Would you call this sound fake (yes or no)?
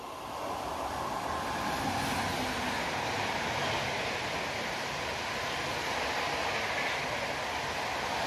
no